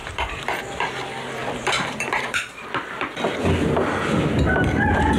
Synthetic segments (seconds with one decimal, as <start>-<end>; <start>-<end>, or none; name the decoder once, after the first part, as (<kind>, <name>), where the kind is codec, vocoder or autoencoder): 0.0-0.6 (vocoder, BigVGAN v2); 1.4-2.7